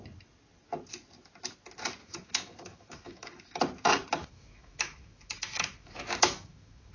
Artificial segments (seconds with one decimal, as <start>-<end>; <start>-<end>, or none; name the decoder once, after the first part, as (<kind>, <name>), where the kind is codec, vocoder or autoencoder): 2.0-3.6 (autoencoder, DAC-VAE); 4.2-6.9

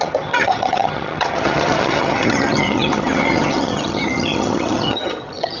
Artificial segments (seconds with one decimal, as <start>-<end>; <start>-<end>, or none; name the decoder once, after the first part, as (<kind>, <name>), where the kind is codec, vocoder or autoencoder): 0.0-5.6 (vocoder, HiFi-GAN)

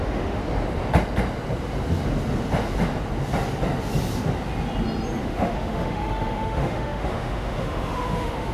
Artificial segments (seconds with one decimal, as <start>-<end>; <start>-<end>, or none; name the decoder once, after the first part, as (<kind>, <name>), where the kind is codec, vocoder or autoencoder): 0.0-0.4 (autoencoder, DAC-VAE); 5.2-8.5

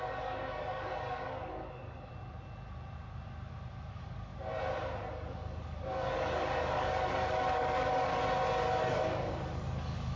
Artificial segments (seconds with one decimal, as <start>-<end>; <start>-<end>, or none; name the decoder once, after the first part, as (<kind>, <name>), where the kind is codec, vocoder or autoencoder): 0.0-2.1 (codec, DAC); 3.9-4.3; 5.1-8.2; 8.8-10.2

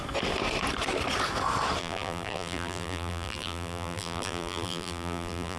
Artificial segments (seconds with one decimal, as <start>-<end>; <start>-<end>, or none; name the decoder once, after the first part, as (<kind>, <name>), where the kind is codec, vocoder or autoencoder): 1.8-5.6 (vocoder, BigVGAN v2)

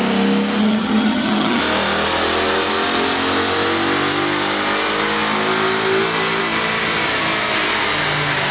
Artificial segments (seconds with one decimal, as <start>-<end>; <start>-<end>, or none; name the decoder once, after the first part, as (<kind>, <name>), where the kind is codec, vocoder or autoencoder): 0.6-1.6 (vocoder, HiFi-GAN)

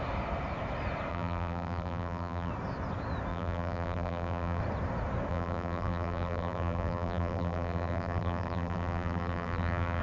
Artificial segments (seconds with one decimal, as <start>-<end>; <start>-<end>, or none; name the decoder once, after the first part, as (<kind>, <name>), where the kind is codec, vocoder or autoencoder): 1.1-2.5 (vocoder, BigVGAN v2); 3.3-4.6; 5.3-10.0

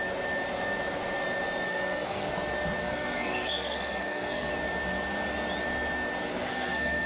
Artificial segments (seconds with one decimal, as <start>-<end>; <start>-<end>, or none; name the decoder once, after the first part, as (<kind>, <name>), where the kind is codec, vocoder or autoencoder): 1.7-2.3 (codec, SNAC); 2.8-4.5; 6.4-7.1